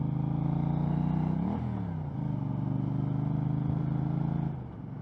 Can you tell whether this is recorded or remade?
recorded